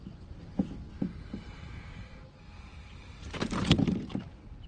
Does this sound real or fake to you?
real